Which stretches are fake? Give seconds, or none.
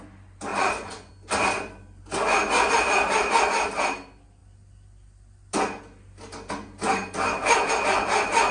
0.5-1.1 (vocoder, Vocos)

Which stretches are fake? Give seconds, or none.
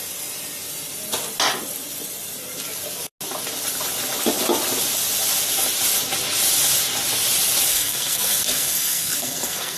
7.7-9.8 (codec, SNAC)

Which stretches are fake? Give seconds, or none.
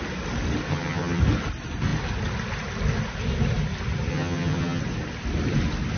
0.7-1.2 (vocoder, HiFi-GAN); 4.1-4.8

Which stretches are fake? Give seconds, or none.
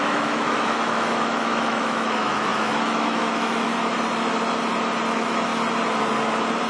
0.0-3.7 (autoencoder, DAC-VAE); 5.1-5.5